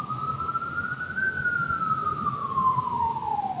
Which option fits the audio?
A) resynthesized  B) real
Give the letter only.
B